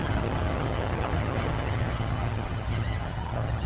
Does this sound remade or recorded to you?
remade